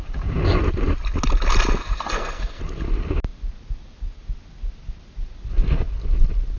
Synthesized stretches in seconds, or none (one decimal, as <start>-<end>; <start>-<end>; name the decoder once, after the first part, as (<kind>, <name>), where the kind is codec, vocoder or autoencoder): 1.8-2.6 (codec, SNAC)